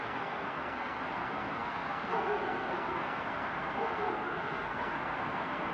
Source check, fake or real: fake